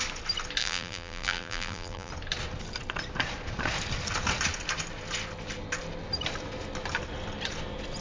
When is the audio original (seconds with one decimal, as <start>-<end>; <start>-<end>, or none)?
0.0-0.6; 2.1-8.0